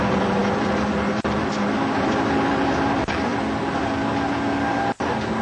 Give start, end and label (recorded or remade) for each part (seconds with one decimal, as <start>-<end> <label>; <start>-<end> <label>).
0.0-5.4 recorded